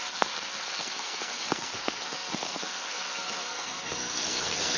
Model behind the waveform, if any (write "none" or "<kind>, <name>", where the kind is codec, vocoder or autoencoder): codec, SNAC